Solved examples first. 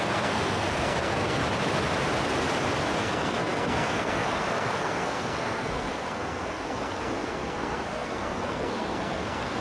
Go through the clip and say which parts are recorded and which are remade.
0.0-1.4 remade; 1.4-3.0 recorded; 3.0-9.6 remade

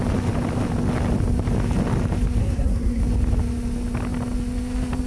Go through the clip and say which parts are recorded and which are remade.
0.0-2.4 recorded; 2.4-3.0 remade; 3.0-5.1 recorded

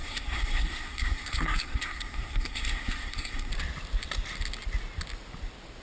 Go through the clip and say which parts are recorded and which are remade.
0.0-3.5 remade; 3.5-5.8 recorded

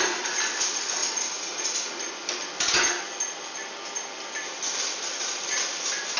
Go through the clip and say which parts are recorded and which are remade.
0.0-6.2 recorded

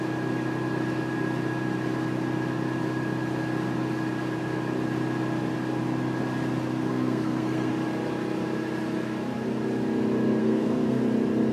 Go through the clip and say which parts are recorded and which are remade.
0.0-6.9 recorded; 6.9-7.7 remade; 7.7-10.4 recorded; 10.4-11.0 remade; 11.0-11.5 recorded

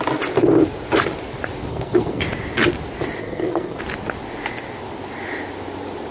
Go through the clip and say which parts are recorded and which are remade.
0.0-1.7 recorded; 1.7-2.2 remade; 2.2-3.2 recorded; 3.2-3.8 remade; 3.8-6.1 recorded